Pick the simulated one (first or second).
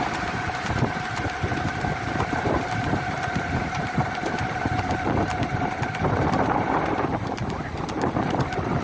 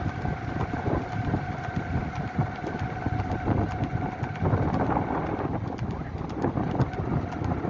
first